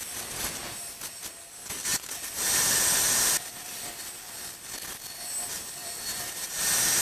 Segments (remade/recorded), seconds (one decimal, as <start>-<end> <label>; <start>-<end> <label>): 0.0-1.9 recorded; 1.9-2.8 remade; 2.8-5.8 recorded; 5.8-6.6 remade; 6.6-7.0 recorded